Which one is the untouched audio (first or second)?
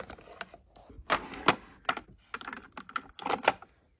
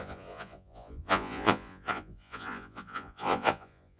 first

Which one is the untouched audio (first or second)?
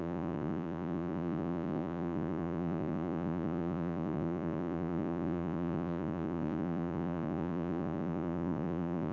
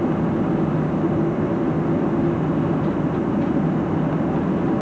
second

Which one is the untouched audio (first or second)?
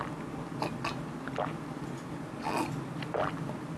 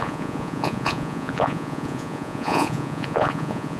first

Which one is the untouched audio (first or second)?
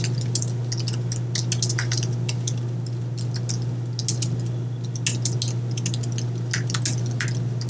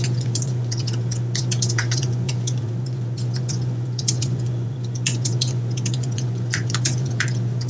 first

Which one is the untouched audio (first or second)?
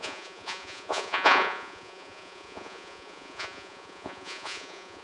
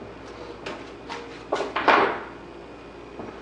second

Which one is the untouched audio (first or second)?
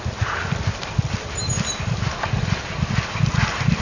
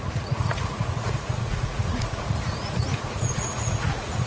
first